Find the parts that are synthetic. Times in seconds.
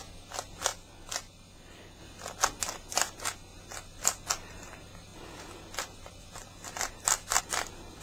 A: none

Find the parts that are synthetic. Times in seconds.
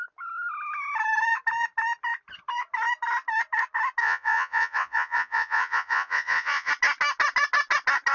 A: 4.0-6.7 (vocoder, Vocos)